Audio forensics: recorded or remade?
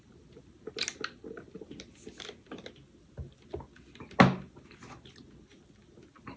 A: recorded